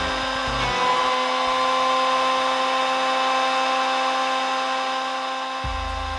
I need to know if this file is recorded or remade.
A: recorded